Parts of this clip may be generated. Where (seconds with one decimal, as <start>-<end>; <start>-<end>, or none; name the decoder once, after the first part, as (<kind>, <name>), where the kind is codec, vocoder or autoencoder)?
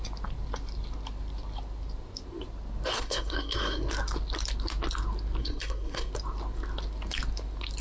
2.9-3.9 (codec, SNAC); 5.4-6.1